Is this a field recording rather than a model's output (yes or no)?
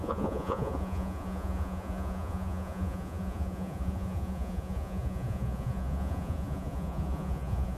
no